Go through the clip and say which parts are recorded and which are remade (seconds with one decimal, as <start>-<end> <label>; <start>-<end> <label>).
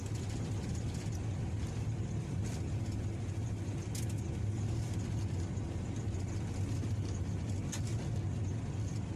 0.0-9.2 recorded